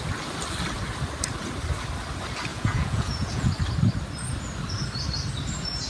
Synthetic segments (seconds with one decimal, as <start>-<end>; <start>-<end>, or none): 2.5-3.5